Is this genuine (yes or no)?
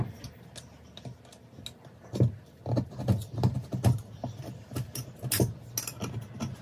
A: yes